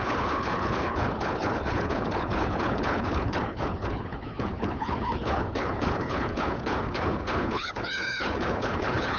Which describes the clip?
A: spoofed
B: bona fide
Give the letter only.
A